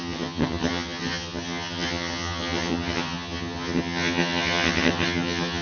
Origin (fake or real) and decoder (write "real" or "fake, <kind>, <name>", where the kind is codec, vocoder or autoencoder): fake, vocoder, HiFi-GAN